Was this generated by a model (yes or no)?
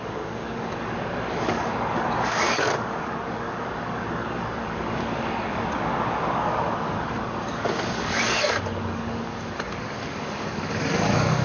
yes